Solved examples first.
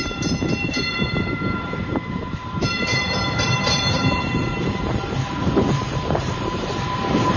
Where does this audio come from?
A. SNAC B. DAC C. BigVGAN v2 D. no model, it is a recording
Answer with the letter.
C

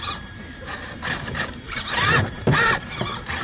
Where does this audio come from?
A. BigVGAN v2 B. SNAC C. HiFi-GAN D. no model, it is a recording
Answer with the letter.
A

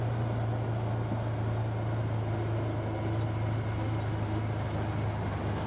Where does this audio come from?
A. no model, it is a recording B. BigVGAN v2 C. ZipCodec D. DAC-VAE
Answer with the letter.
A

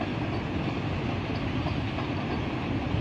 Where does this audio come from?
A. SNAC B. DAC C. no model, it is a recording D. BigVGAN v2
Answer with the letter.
C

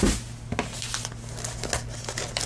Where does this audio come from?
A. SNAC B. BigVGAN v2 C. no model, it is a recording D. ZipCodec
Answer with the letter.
C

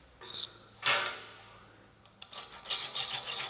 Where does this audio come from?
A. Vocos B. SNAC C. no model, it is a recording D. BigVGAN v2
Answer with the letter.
C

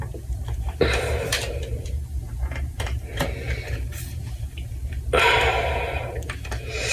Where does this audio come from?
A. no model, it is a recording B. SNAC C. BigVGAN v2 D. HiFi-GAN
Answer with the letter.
C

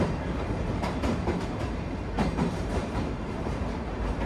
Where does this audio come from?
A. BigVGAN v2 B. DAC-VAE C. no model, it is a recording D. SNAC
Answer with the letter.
A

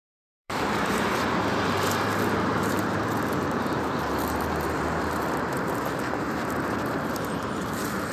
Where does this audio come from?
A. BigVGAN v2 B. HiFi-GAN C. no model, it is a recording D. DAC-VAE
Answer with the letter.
A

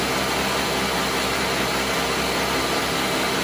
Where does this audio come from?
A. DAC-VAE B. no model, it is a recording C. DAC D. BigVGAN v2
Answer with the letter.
B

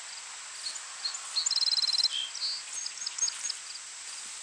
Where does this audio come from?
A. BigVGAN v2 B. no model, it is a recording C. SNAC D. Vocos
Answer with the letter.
B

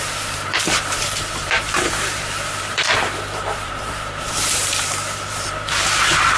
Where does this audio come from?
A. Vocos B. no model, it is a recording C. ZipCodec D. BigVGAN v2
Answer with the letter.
D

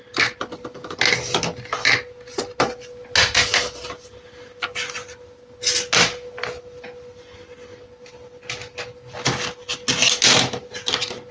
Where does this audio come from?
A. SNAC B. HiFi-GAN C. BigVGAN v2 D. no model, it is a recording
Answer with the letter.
D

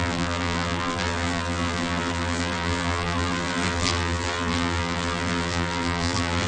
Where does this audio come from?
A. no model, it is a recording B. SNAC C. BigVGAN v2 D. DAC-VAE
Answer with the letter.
C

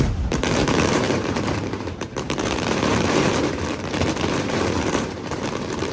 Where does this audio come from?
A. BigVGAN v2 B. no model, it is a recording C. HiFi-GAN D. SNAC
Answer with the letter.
A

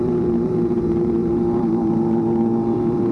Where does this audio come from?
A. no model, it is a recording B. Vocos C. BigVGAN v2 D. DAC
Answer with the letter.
C